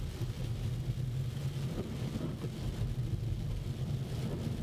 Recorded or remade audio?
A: recorded